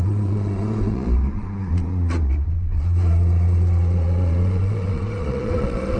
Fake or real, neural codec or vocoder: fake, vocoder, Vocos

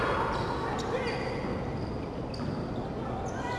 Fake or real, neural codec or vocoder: real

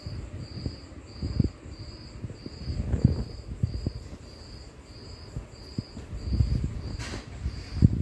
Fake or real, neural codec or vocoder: real